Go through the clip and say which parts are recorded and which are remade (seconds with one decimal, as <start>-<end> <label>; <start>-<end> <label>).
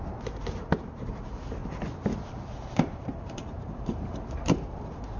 0.0-1.6 remade; 1.6-2.2 recorded; 2.2-5.2 remade